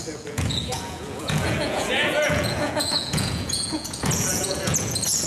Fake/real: fake